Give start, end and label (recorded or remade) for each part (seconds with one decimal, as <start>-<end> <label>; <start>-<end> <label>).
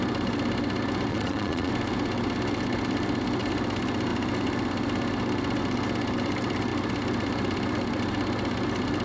0.0-1.1 recorded; 1.1-1.7 remade; 1.7-9.0 recorded